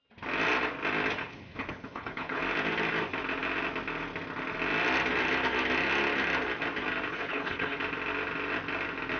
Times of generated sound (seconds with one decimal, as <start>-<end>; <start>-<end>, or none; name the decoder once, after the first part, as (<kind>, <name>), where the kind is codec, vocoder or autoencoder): 1.2-2.4 (codec, HILCodec); 7.1-7.8